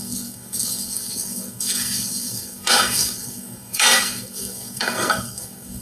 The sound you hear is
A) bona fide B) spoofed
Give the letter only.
B